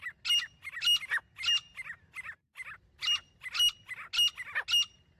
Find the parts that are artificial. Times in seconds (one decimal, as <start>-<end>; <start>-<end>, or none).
none